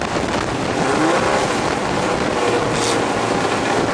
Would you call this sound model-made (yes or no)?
no